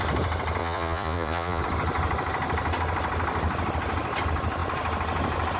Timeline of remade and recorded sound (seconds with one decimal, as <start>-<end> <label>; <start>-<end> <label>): 0.0-0.6 recorded; 0.6-1.6 remade; 1.6-5.6 recorded